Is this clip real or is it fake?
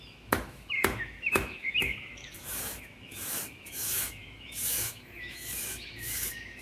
fake